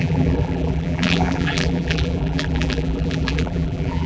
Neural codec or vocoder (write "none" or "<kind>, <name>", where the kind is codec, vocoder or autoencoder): vocoder, BigVGAN v2